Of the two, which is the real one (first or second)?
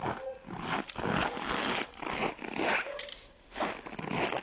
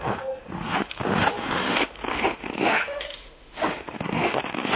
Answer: first